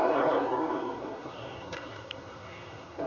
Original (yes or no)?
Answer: no